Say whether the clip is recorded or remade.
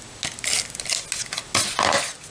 recorded